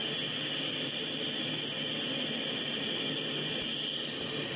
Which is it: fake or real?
real